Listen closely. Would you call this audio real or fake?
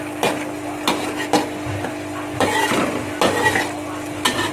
real